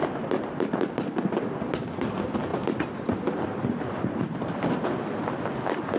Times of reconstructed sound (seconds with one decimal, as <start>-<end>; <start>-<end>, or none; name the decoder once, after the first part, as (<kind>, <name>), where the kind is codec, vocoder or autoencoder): none